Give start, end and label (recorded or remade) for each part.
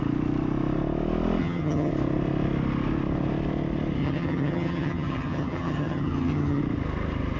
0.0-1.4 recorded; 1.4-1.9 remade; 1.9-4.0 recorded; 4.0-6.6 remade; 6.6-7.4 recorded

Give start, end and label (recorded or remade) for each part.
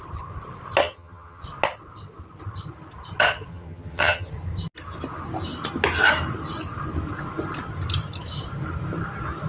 0.0-0.8 recorded; 0.8-1.4 remade; 1.4-3.5 recorded; 3.5-4.3 remade; 4.3-9.5 recorded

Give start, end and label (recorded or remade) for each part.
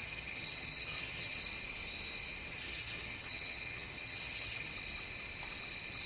0.0-1.4 remade; 1.4-2.5 recorded; 2.5-4.7 remade; 4.7-6.1 recorded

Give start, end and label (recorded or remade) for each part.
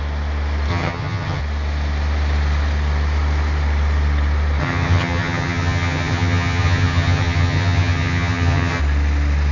0.0-0.7 recorded; 0.7-1.4 remade; 1.4-4.6 recorded; 4.6-8.8 remade; 8.8-9.5 recorded